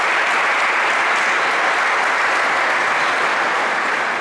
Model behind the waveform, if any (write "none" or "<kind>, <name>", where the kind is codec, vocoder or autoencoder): none